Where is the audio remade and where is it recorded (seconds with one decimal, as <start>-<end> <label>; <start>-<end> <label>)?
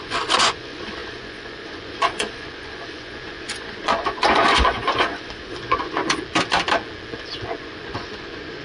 0.0-6.0 remade; 6.0-7.6 recorded; 7.6-8.6 remade